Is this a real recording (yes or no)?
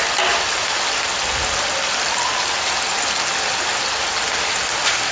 yes